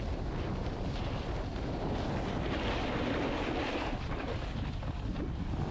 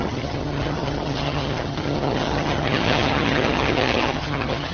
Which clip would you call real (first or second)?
first